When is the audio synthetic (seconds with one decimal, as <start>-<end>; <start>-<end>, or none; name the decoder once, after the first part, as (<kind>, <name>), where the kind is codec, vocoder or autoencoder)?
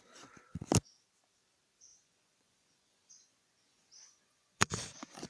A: 1.9-5.3 (vocoder, Vocos)